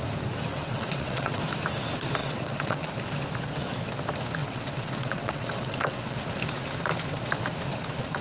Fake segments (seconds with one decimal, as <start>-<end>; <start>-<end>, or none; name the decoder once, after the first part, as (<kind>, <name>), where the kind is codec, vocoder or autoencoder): 0.5-1.4 (vocoder, WaveNeXt); 2.2-2.9; 4.4-6.2